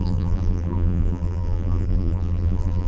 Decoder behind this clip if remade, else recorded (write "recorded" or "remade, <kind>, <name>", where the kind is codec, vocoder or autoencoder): remade, vocoder, BigVGAN v2